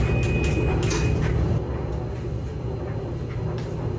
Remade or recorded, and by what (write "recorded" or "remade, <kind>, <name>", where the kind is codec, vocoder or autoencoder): recorded